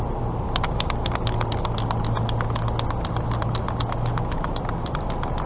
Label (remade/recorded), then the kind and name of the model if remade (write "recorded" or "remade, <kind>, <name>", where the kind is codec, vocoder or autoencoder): recorded